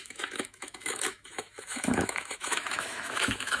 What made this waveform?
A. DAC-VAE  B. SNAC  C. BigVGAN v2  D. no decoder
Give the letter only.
A